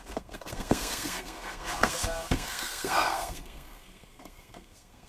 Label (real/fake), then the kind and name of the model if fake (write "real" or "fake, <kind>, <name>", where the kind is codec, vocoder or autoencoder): fake, codec, SNAC